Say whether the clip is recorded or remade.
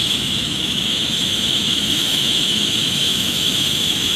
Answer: remade